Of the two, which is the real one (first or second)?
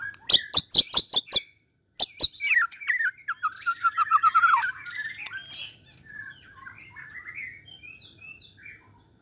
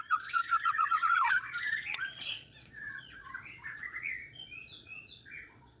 first